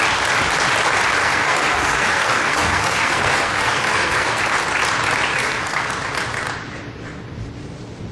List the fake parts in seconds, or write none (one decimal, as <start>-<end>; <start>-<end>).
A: 1.2-4.4; 5.3-5.9